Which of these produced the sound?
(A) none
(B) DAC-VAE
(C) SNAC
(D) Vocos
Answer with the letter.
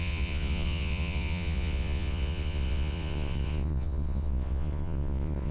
D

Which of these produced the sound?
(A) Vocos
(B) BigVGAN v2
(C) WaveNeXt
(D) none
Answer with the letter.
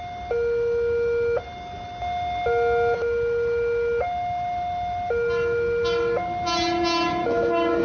D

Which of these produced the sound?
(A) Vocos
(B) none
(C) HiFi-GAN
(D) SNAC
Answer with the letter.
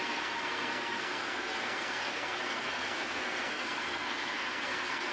D